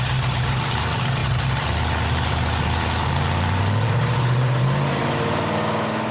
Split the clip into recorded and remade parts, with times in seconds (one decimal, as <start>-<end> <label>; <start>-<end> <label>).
0.0-1.2 remade; 1.2-3.9 recorded; 3.9-5.0 remade; 5.0-6.1 recorded